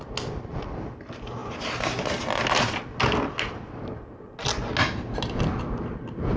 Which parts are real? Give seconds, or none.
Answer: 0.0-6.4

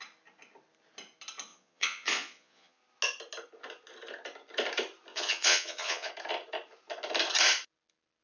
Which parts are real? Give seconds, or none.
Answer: 0.0-1.5; 2.8-5.1; 6.1-8.2

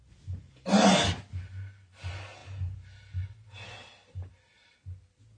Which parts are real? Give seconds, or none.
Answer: 0.0-5.4

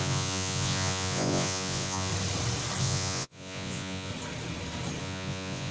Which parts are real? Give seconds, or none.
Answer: 2.1-2.8; 4.1-5.0

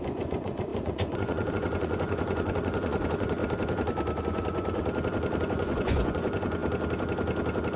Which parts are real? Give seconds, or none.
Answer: 3.4-4.2; 4.8-5.4; 6.6-7.8